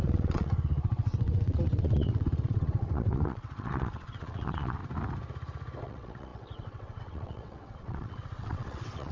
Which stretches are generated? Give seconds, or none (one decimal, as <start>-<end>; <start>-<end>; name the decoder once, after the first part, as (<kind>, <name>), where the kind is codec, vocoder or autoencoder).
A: 0.0-4.8 (vocoder, WaveNeXt); 5.8-9.1